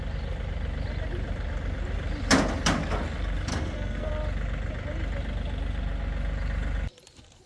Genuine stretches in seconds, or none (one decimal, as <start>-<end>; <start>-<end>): 0.0-3.5; 4.1-7.5